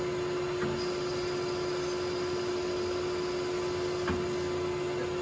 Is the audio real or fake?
real